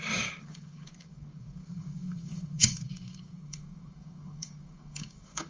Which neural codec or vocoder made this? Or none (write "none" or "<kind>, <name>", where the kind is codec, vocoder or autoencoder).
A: codec, DAC